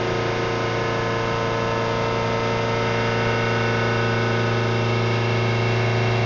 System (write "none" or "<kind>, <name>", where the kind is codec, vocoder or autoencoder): none